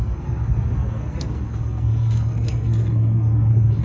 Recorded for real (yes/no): no